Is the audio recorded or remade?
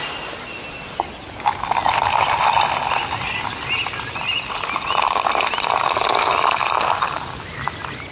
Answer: recorded